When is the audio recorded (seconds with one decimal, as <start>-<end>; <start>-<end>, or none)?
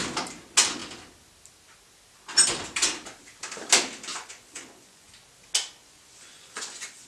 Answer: 0.0-4.1; 5.1-5.8